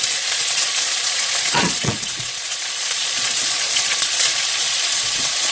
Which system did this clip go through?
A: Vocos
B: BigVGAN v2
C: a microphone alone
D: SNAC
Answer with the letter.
A